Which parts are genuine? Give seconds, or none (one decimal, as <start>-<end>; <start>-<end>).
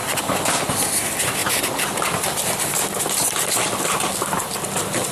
0.5-1.4; 4.5-5.1